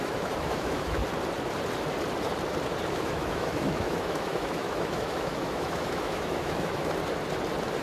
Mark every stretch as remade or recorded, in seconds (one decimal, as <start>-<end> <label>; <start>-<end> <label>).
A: 0.0-1.0 remade; 1.0-2.9 recorded; 2.9-7.0 remade; 7.0-7.8 recorded